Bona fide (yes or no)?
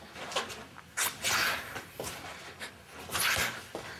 yes